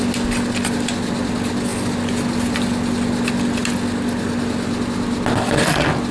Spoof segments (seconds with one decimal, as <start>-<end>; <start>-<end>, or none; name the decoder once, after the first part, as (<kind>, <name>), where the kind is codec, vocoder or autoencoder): none